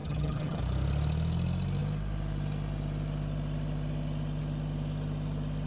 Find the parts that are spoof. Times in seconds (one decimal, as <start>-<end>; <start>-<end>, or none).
0.0-0.6